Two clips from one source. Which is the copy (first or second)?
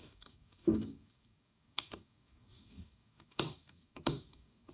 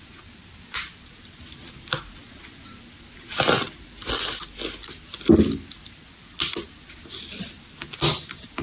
first